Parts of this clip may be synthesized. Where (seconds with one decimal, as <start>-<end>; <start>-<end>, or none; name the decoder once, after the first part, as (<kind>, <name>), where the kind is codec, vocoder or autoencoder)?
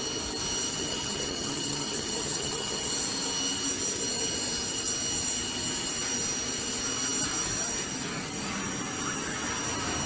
0.7-2.9 (vocoder, HiFi-GAN)